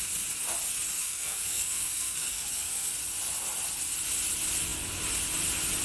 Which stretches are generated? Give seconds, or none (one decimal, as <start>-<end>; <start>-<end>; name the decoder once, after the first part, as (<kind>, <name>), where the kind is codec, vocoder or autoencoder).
1.0-2.9 (codec, SNAC)